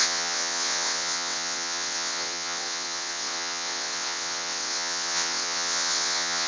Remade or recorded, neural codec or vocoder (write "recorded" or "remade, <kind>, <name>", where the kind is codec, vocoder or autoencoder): remade, vocoder, WaveNeXt